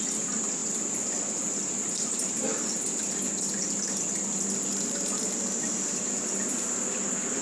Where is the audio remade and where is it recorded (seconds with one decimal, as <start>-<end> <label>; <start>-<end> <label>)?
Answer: 0.0-7.4 recorded